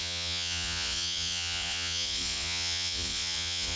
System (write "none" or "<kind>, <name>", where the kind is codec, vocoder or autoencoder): vocoder, Vocos